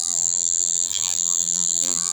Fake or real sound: fake